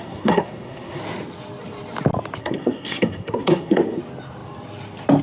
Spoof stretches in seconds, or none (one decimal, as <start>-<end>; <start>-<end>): 0.0-1.0; 2.4-4.0